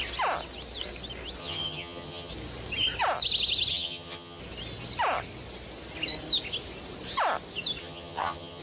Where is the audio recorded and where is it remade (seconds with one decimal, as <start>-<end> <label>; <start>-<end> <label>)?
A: 0.0-1.4 recorded; 1.4-2.3 remade; 2.3-3.7 recorded; 3.7-4.4 remade; 4.4-7.8 recorded; 7.8-8.6 remade